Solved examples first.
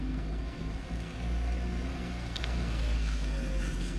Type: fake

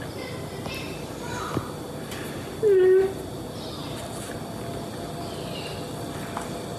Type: real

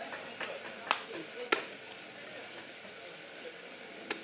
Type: real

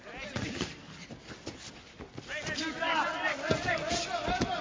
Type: real